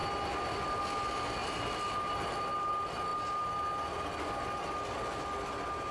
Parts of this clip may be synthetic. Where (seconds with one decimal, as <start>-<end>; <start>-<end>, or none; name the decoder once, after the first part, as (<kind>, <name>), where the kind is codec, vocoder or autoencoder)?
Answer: none